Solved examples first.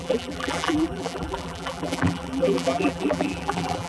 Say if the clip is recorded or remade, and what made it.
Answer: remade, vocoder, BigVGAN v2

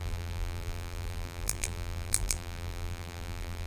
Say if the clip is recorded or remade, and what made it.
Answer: remade, vocoder, BigVGAN v2